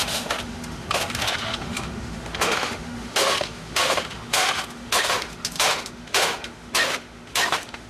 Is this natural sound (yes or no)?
no